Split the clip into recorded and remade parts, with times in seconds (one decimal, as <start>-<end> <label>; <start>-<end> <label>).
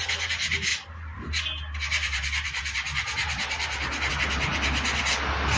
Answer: 0.0-0.7 recorded; 0.7-4.1 remade; 4.1-5.6 recorded